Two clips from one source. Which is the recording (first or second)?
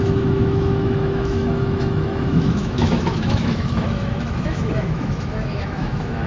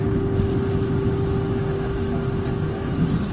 second